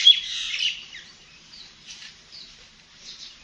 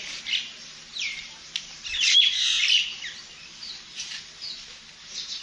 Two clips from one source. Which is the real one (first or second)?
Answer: second